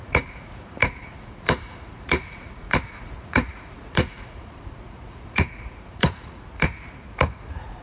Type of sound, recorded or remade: remade